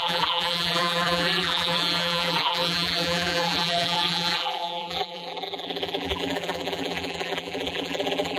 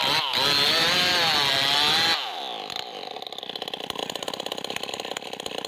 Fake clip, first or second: first